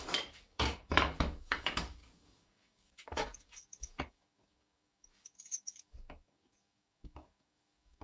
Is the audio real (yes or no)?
no